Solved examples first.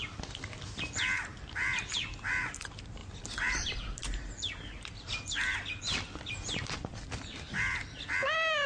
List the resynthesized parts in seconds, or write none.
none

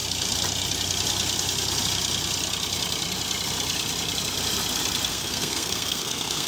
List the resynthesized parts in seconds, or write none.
5.1-6.5 (codec, SNAC)

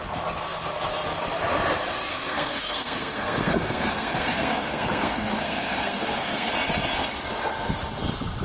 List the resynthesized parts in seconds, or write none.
2.1-6.5 (codec, SNAC)

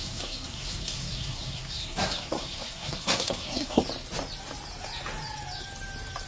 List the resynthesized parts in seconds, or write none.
0.0-3.8 (codec, SNAC)

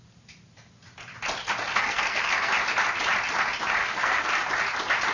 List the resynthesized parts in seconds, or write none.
1.7-2.5 (codec, SNAC); 3.8-4.4

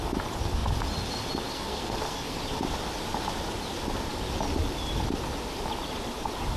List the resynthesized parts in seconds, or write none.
1.5-2.4 (codec, SNAC)